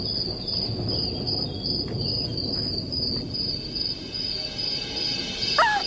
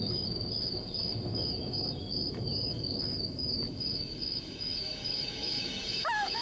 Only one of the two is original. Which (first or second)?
first